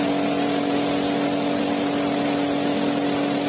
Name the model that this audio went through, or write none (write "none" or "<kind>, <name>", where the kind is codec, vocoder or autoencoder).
none